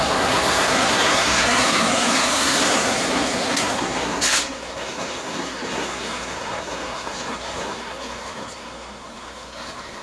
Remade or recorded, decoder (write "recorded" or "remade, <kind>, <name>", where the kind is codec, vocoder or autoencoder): remade, codec, SNAC